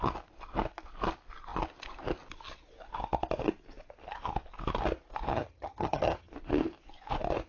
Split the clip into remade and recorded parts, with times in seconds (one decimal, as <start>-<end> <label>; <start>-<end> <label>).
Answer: 0.0-5.3 recorded; 5.3-6.3 remade; 6.3-7.5 recorded